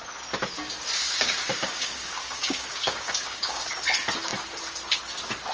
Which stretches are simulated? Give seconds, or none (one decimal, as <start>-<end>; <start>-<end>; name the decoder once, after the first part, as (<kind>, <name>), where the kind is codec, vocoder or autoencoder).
1.0-3.7 (codec, DAC)